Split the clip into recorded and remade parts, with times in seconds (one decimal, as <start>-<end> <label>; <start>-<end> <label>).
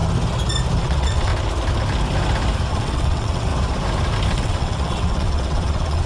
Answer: 0.0-0.8 recorded; 0.8-1.3 remade; 1.3-2.7 recorded; 2.7-3.5 remade; 3.5-4.3 recorded; 4.3-6.1 remade